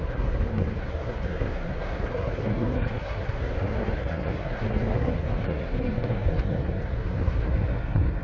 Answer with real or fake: fake